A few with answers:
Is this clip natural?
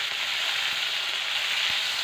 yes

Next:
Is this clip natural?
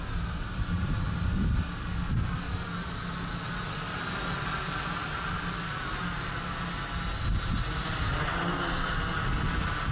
yes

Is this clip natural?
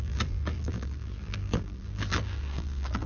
no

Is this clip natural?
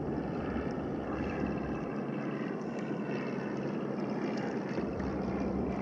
no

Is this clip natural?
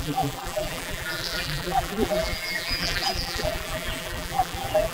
no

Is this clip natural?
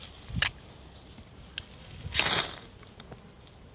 yes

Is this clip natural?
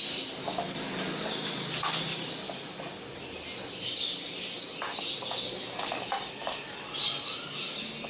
yes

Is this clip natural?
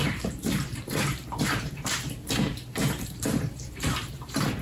no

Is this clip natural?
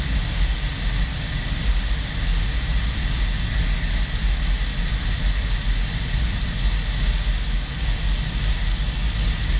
yes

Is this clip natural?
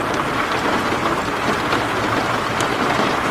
no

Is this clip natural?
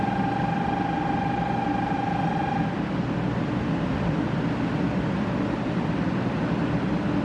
no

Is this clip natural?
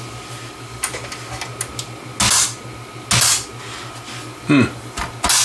yes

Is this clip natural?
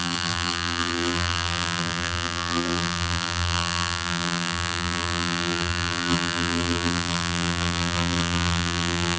no